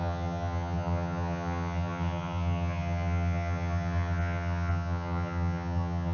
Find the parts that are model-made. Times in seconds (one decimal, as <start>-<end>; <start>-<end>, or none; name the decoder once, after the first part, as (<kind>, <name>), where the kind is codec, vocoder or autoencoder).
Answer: 0.0-6.1 (vocoder, HiFi-GAN)